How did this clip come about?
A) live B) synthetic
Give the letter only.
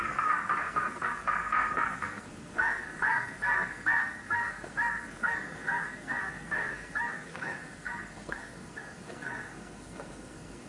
B